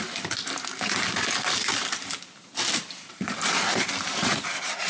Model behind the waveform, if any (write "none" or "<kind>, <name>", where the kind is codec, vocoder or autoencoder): vocoder, BigVGAN v2